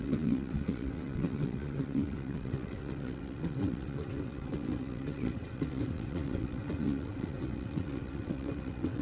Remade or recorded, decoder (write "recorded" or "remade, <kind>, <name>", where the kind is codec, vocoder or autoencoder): remade, vocoder, WaveNeXt